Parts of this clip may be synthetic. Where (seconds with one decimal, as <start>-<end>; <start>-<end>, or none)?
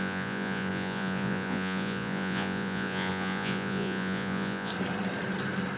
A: 0.0-4.7